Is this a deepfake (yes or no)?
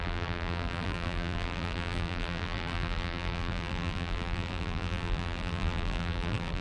yes